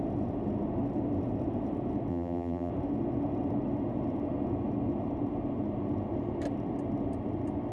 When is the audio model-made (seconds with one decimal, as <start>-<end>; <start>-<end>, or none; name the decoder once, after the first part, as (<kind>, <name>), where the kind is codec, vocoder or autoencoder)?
2.1-2.7 (vocoder, BigVGAN v2)